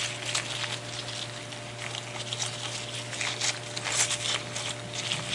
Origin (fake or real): real